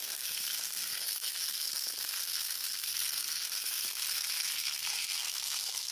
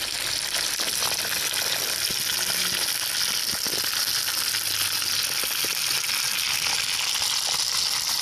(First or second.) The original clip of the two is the second